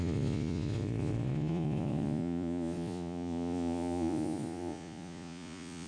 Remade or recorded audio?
remade